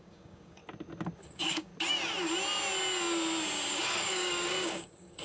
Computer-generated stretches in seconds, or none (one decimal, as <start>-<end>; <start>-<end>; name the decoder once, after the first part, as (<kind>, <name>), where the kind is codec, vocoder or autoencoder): 0.0-0.6 (codec, DAC); 1.2-1.7; 3.7-5.2